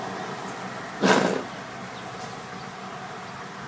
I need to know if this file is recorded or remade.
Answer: recorded